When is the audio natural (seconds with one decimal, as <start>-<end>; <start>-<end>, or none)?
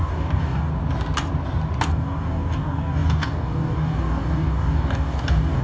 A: 0.7-1.9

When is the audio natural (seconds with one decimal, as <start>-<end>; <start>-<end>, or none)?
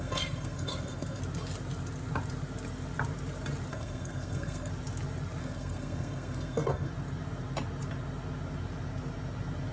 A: 1.2-3.7; 4.7-5.4; 6.9-9.7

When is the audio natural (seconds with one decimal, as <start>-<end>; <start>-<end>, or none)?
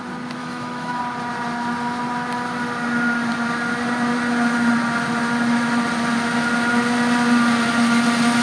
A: 0.0-0.4; 1.0-8.4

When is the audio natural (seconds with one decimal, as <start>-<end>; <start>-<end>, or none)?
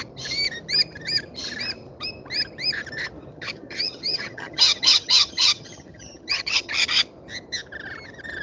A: 0.0-3.3; 6.7-8.4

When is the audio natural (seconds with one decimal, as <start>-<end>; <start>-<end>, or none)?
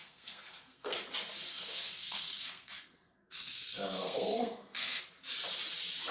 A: 1.0-1.5; 5.0-6.1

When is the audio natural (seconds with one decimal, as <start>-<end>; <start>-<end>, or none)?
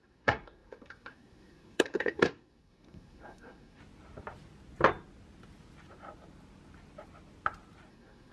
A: 3.8-7.9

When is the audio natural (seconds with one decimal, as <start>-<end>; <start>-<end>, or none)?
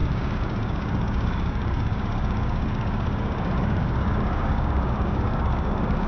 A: none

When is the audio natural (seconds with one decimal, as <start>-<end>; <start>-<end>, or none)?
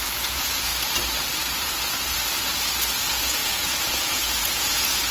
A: 0.7-1.5